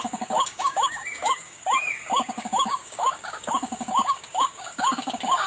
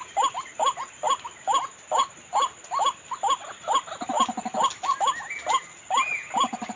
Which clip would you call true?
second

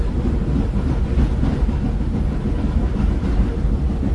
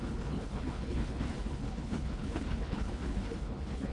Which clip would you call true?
first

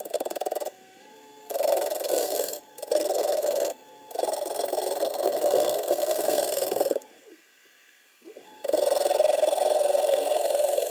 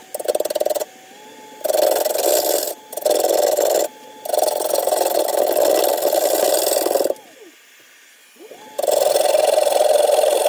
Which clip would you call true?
second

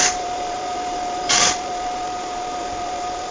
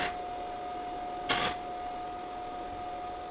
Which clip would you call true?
second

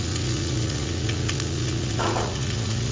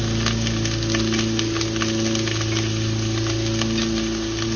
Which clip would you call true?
second